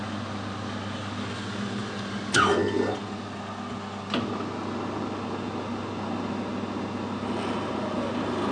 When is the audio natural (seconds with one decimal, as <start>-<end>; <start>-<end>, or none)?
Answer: 0.0-8.5